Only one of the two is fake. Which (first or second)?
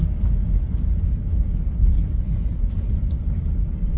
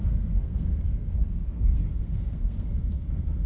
second